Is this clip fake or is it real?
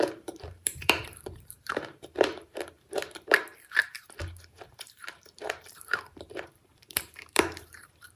fake